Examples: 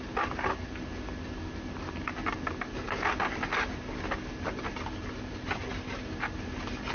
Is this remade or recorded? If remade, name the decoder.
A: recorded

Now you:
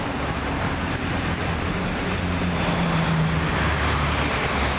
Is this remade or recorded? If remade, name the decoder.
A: recorded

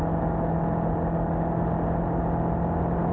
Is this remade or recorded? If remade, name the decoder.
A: recorded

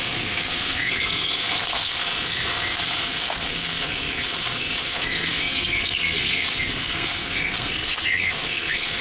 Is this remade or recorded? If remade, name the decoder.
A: remade, codec, SNAC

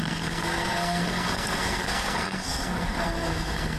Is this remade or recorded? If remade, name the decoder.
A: remade, codec, SNAC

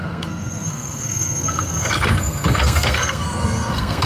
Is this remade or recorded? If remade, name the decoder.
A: remade, codec, SNAC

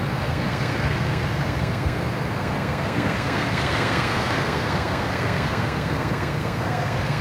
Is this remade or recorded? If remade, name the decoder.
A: remade, codec, SNAC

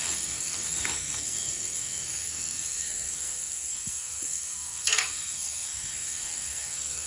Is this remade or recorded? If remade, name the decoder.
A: remade, codec, SNAC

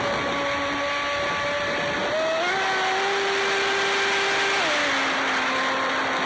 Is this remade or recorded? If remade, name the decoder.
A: recorded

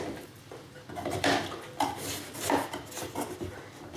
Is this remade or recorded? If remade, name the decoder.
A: recorded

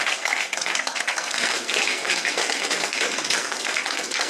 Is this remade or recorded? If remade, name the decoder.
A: remade, codec, SNAC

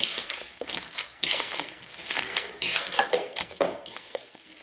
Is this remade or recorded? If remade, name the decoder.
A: remade, codec, SNAC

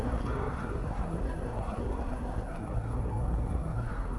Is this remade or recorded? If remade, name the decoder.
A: remade, codec, SNAC